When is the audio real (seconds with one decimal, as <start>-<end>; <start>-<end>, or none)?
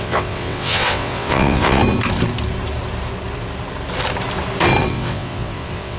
1.8-4.8